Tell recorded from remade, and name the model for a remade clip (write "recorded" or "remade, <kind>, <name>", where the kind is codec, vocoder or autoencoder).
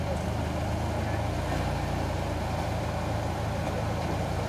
recorded